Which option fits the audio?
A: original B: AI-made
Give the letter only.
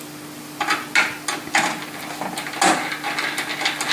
A